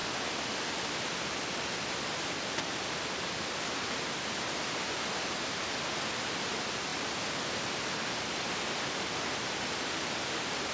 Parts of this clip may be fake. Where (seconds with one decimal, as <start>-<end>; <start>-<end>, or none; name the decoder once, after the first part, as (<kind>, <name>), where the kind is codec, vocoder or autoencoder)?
none